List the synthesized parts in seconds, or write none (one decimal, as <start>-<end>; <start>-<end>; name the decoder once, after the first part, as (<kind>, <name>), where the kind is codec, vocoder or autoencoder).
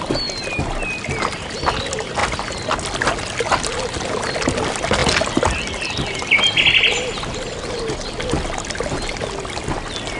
none